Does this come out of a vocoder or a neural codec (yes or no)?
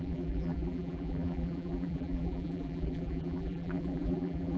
yes